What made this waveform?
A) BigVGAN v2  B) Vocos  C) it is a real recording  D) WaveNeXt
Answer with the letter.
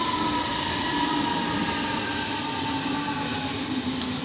C